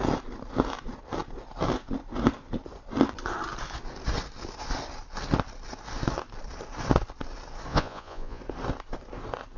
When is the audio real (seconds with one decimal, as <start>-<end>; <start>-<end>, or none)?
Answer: 0.0-7.7; 8.4-9.6